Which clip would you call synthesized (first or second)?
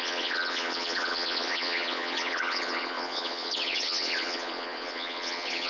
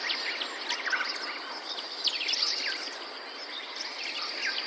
first